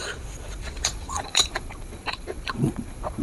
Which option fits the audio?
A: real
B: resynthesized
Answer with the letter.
B